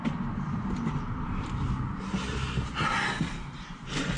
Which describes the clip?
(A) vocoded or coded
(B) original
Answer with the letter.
B